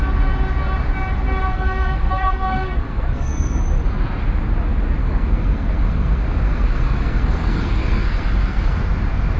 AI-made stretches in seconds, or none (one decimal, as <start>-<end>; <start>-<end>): 1.5-3.6; 5.0-8.8

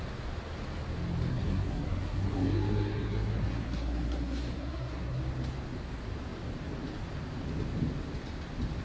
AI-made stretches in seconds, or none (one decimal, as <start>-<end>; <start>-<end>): 1.3-5.2